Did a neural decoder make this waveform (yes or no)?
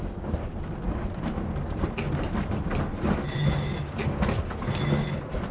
no